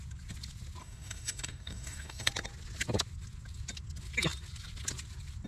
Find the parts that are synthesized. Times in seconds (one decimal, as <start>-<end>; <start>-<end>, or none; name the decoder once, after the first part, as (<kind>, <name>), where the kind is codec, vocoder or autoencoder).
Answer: 0.8-2.3 (codec, DAC)